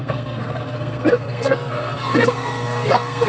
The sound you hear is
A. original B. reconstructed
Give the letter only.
B